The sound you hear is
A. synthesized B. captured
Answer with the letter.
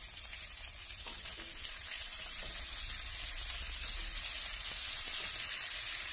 B